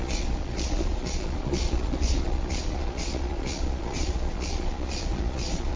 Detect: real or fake fake